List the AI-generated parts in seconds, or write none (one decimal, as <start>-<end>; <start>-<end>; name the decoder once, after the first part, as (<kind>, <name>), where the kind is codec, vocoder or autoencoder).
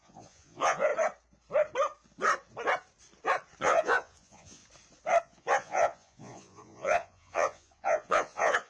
0.0-0.9 (vocoder, Vocos); 3.6-4.6; 5.2-8.7